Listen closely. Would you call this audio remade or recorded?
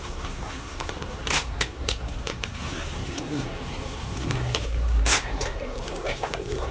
remade